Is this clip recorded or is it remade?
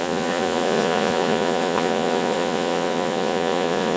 remade